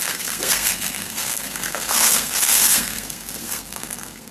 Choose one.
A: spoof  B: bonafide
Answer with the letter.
A